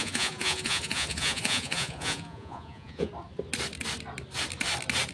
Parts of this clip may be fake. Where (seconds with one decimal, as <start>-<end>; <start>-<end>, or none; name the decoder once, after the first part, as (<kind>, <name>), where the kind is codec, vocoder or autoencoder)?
0.0-3.1 (vocoder, Vocos)